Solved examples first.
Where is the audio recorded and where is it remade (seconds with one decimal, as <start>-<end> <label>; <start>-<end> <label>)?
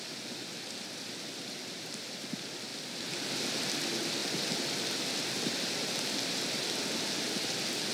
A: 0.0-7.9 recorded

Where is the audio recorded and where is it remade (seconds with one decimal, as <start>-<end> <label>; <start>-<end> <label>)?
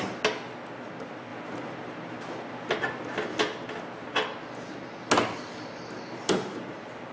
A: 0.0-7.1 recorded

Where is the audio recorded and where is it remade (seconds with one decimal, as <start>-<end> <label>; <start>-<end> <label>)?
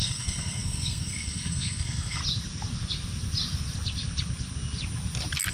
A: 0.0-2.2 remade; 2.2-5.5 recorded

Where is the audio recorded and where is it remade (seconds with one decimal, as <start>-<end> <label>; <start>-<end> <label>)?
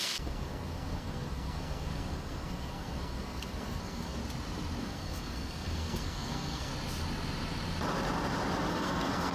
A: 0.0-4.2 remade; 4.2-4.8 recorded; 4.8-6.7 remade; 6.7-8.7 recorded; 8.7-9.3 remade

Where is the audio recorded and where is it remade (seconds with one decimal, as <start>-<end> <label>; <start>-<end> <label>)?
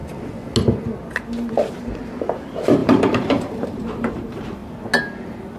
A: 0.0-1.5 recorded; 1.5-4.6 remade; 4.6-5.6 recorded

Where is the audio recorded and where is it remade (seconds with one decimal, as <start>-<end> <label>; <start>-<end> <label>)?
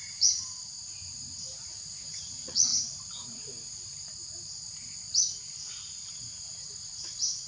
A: 0.0-0.9 remade; 0.9-1.6 recorded; 1.6-2.7 remade; 2.7-6.1 recorded; 6.1-7.5 remade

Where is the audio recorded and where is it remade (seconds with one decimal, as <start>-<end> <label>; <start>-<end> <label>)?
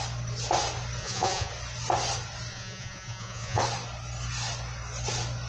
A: 0.0-1.0 recorded; 1.0-1.5 remade; 1.5-2.5 recorded; 2.5-3.6 remade; 3.6-5.5 recorded